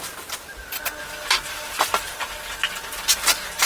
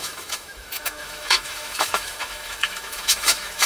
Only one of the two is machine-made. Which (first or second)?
second